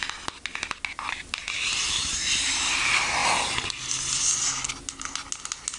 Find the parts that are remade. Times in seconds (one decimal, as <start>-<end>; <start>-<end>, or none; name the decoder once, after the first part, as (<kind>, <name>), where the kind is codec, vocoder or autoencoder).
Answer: 1.8-2.8 (vocoder, BigVGAN v2)